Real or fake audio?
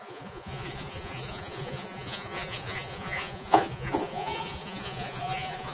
fake